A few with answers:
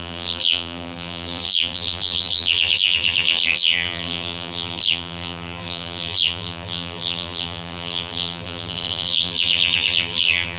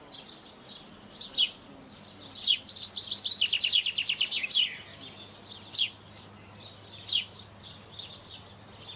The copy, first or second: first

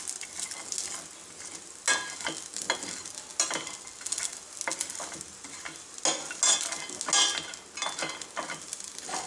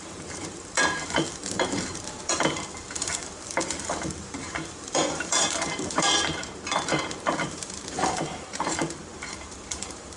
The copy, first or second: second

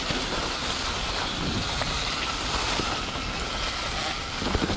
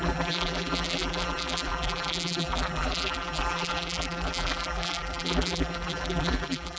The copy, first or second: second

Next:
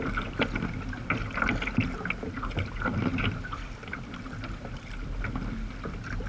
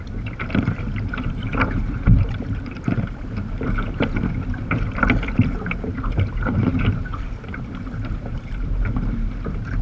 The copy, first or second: second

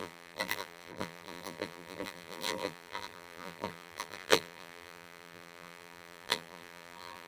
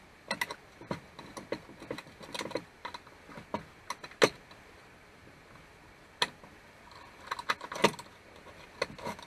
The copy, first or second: first